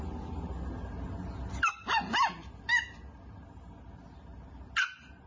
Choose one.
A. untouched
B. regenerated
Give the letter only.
A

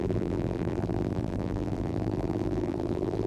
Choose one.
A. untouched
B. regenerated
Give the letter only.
B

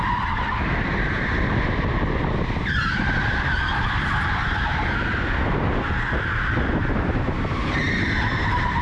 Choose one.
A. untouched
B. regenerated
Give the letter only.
A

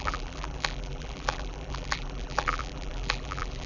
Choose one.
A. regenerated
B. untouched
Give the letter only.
A